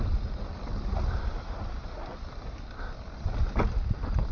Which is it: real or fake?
real